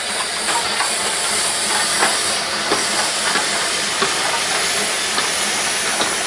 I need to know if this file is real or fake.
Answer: real